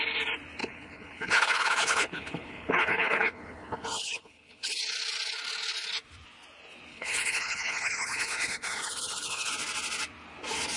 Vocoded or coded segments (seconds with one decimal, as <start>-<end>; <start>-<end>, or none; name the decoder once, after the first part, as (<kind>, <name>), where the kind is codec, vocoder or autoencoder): 0.6-4.8 (codec, HILCodec); 6.9-9.5